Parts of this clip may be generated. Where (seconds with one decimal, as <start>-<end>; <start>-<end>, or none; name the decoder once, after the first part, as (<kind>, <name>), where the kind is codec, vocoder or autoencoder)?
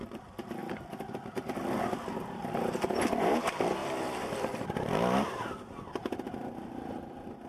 3.8-4.6 (vocoder, BigVGAN v2)